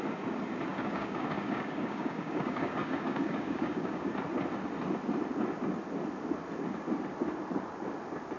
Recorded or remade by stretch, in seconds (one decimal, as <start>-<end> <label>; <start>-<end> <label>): 0.0-0.7 recorded; 0.7-4.1 remade; 4.1-8.4 recorded